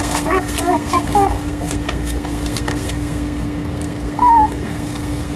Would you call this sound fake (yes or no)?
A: yes